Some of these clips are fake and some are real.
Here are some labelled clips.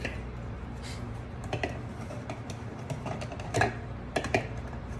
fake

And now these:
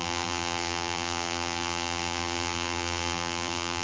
fake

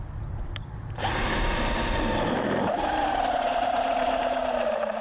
fake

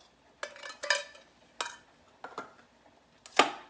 real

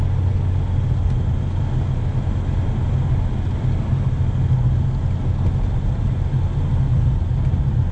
real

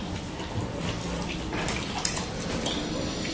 fake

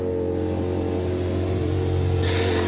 real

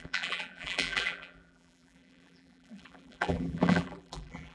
fake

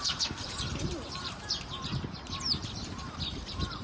fake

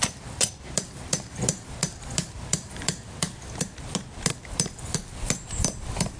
fake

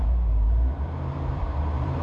fake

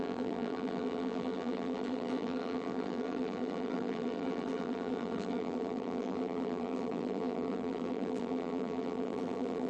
fake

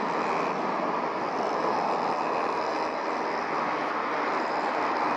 real